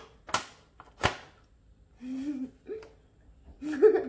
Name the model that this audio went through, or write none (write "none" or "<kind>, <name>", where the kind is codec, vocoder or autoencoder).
none